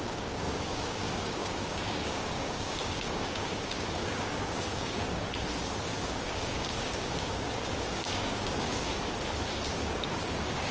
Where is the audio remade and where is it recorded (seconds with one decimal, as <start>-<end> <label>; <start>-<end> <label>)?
0.0-5.2 remade; 5.2-6.1 recorded; 6.1-8.9 remade; 8.9-9.8 recorded; 9.8-10.7 remade